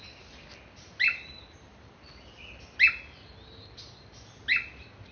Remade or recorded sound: recorded